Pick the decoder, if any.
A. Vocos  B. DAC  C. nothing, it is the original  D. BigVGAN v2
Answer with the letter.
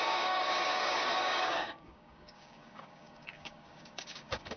B